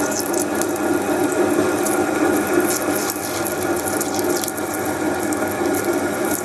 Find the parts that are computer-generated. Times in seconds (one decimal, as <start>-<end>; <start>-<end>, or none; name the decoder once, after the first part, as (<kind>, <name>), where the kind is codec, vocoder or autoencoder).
none